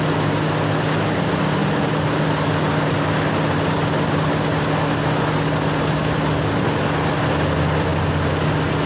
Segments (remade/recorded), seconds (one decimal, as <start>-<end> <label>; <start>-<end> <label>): 0.0-8.9 recorded